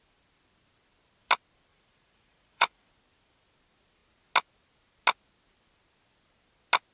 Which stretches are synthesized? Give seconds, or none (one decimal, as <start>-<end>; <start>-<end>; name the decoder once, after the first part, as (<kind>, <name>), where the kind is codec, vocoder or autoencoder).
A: 1.7-2.9 (vocoder, Vocos)